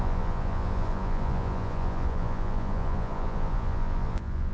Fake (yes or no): yes